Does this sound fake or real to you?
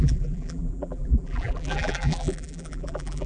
fake